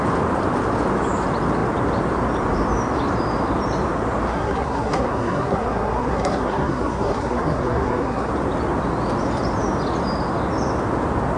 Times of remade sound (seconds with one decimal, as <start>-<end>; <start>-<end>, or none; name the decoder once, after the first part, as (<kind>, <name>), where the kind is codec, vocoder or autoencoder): 4.3-8.3 (codec, SNAC)